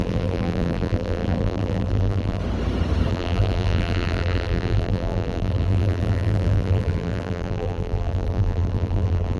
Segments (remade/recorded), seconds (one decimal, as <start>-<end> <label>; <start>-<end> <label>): 0.0-2.4 remade; 2.4-3.1 recorded; 3.1-9.4 remade